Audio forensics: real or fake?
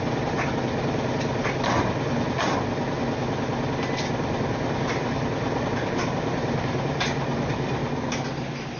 real